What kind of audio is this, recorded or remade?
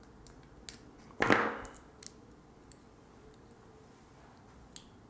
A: recorded